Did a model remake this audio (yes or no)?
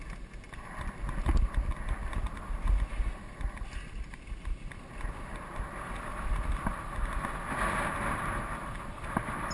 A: no